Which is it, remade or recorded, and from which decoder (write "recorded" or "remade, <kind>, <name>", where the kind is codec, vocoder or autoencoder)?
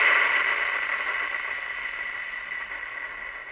recorded